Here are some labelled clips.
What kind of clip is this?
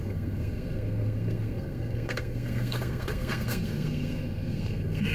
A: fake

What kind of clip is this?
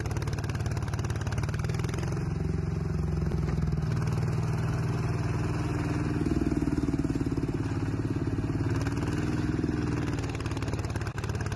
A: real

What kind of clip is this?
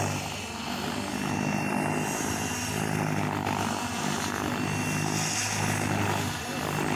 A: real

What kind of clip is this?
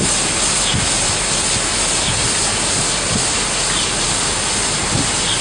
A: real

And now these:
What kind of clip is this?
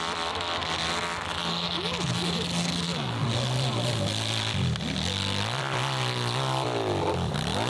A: real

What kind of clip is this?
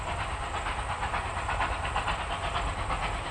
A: real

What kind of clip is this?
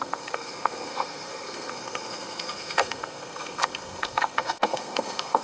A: fake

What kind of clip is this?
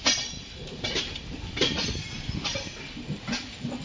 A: real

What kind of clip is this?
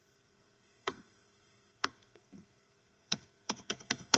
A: fake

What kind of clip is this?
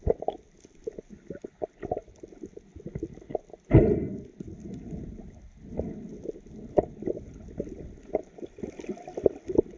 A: real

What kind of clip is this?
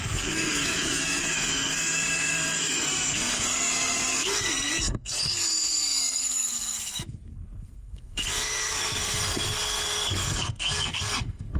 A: fake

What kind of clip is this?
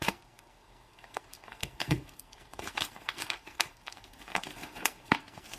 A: fake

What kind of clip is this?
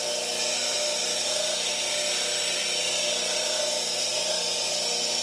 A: real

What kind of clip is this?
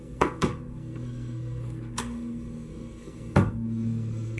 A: fake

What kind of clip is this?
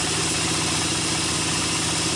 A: real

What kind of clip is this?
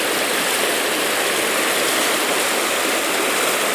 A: real